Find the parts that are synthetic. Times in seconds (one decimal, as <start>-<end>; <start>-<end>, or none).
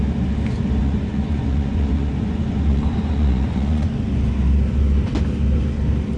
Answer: 0.8-3.9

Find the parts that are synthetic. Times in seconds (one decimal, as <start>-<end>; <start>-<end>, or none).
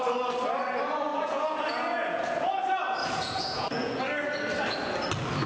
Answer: 1.1-2.6; 3.0-4.0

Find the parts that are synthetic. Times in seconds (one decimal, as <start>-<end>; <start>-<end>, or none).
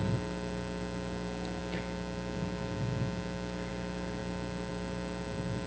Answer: none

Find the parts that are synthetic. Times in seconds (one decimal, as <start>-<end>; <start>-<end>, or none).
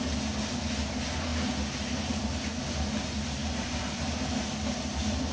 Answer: 3.4-4.0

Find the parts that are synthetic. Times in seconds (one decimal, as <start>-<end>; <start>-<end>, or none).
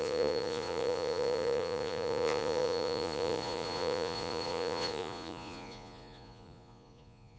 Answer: 0.0-7.4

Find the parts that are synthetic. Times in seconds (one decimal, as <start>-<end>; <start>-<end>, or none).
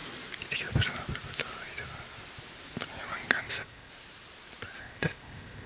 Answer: 3.4-3.9; 4.8-5.7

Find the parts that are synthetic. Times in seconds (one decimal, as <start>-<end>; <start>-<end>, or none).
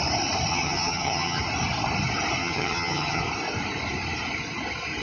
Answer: 0.5-1.4; 2.4-3.2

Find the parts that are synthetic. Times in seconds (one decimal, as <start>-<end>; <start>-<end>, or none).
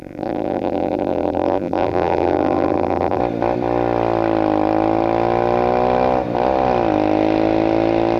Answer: 0.0-3.2